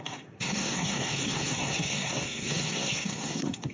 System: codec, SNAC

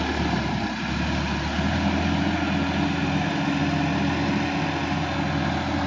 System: none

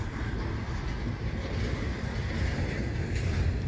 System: none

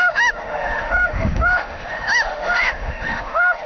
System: autoencoder, DAC-VAE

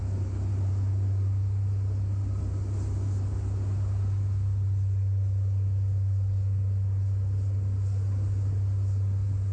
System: none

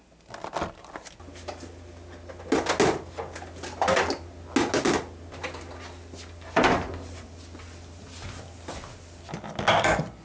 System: none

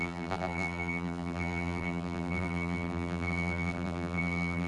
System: vocoder, BigVGAN v2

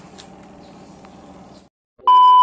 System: none